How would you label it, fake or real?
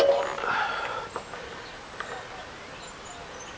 real